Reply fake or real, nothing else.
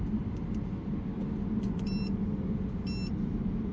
real